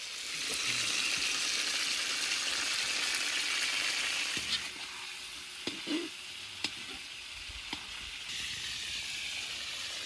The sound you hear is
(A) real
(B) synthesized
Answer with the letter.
A